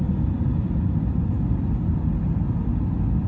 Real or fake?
real